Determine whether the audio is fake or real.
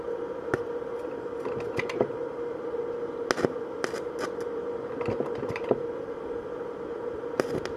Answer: real